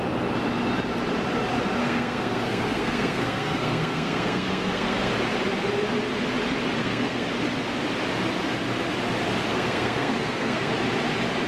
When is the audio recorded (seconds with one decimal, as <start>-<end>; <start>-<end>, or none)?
0.0-1.8; 5.1-6.8; 7.3-9.5; 10.7-11.5